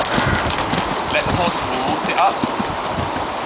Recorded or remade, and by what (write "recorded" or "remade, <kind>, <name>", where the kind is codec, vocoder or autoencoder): recorded